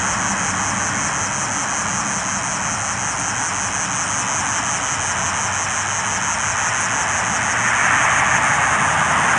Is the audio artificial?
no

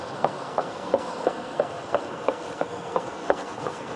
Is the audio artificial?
yes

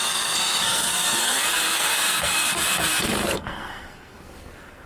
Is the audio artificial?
yes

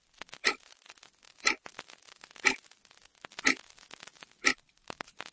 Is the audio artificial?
no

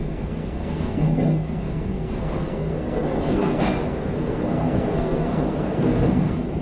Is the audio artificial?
yes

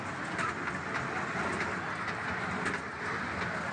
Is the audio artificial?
no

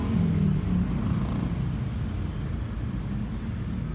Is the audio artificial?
no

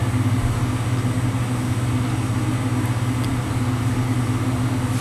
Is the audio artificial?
no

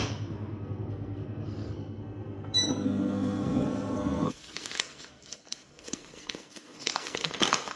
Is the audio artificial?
yes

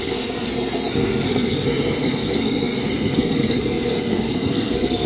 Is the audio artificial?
yes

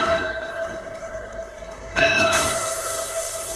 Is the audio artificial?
yes